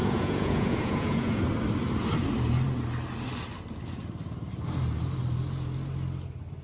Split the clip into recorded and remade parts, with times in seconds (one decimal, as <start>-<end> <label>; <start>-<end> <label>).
0.0-1.4 remade; 1.4-6.6 recorded